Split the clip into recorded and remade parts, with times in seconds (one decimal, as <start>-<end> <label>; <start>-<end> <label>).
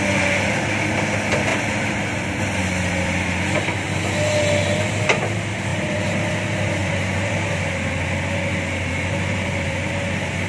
0.0-5.7 recorded; 5.7-6.3 remade; 6.3-6.8 recorded; 6.8-7.5 remade; 7.5-10.5 recorded